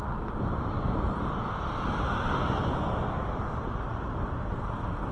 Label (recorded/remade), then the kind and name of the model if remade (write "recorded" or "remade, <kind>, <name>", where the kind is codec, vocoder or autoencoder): recorded